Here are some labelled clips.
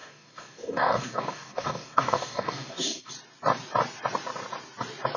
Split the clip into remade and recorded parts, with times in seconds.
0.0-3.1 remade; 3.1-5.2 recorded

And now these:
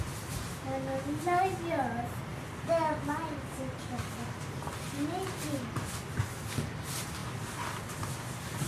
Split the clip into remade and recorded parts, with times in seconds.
0.0-2.3 recorded; 2.3-4.4 remade; 4.4-8.7 recorded